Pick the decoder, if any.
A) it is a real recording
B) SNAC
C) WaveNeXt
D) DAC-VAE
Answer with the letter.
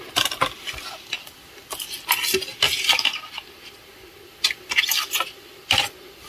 A